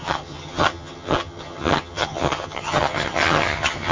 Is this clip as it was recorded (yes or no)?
no